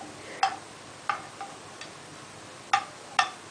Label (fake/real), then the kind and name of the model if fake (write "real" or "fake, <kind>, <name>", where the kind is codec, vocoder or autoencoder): real